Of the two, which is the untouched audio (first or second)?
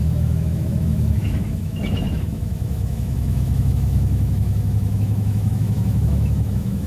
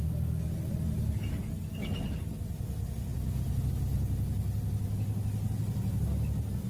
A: second